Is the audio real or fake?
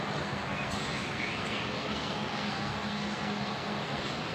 fake